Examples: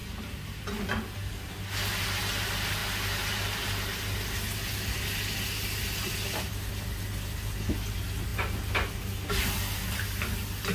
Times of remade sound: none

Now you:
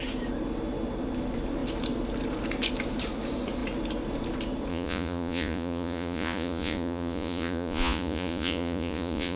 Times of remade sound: 4.7-9.4 (vocoder, Vocos)

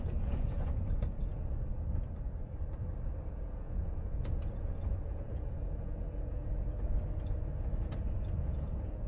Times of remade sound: 0.0-1.3 (vocoder, Vocos); 3.3-6.4; 8.4-9.1

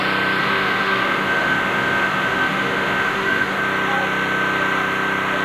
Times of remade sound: 0.4-3.6 (autoencoder, DAC-VAE)